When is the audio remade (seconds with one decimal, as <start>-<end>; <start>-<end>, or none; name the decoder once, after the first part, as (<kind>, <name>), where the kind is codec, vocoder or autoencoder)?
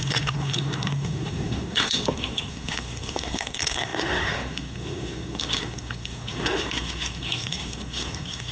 0.0-8.5 (codec, SNAC)